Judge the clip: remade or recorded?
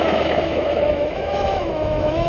remade